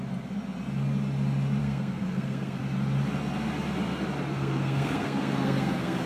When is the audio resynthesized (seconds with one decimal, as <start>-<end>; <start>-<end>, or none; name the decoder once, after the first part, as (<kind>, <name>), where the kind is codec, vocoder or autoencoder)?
1.6-2.6 (codec, SNAC); 4.3-6.1